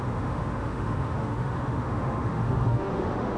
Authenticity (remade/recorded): remade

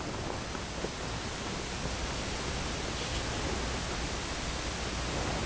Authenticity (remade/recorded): recorded